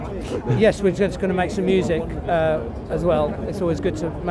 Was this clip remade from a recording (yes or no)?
no